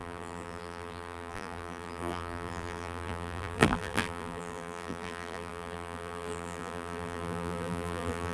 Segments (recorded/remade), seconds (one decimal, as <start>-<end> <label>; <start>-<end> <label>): 0.0-8.3 remade